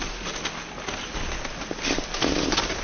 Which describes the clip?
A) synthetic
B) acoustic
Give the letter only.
B